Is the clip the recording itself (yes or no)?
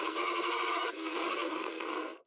no